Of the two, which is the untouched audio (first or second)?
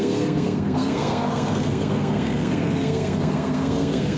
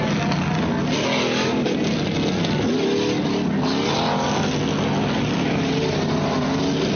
second